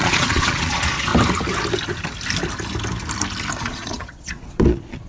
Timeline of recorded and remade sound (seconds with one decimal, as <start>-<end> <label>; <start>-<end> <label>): 0.0-1.1 remade; 1.1-3.6 recorded; 3.6-5.1 remade